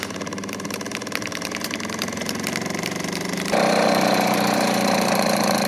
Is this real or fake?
fake